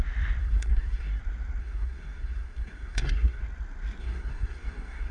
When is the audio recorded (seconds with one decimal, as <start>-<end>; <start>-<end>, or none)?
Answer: 0.0-0.4; 1.2-1.6; 3.4-4.0